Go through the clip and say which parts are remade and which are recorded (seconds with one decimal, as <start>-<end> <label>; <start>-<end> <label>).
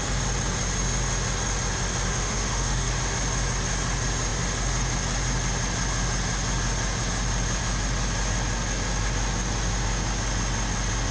0.0-2.1 recorded; 2.1-2.9 remade; 2.9-11.1 recorded